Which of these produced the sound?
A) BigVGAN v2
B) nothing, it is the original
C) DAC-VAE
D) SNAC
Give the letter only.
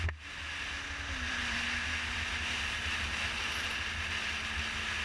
B